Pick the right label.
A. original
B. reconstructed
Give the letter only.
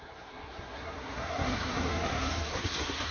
B